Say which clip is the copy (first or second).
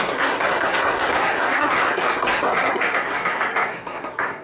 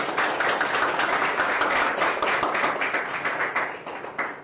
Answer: first